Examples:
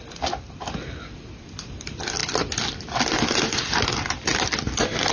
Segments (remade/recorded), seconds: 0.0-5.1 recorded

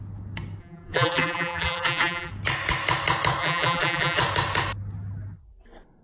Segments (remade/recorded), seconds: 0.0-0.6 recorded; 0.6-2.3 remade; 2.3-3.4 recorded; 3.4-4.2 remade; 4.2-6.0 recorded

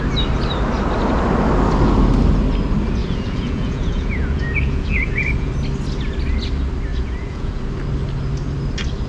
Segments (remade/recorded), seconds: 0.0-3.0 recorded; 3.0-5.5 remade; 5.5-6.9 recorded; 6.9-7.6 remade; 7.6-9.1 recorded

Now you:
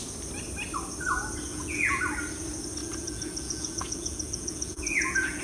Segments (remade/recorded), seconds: 0.0-1.5 recorded; 1.5-2.0 remade; 2.0-2.8 recorded; 2.8-5.4 remade